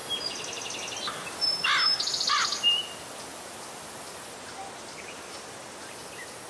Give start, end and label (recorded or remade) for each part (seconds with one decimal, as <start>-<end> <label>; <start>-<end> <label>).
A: 0.0-6.5 recorded